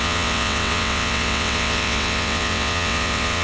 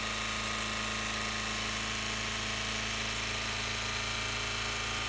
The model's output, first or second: first